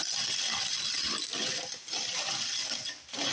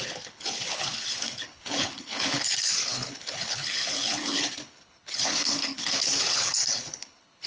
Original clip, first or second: first